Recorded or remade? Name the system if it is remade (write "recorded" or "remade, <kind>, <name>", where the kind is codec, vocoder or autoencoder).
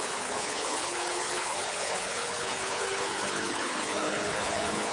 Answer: remade, codec, HILCodec